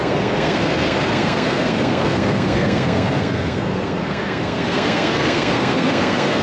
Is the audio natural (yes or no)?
no